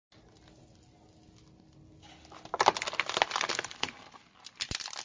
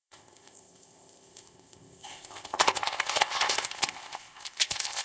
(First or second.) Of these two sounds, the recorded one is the first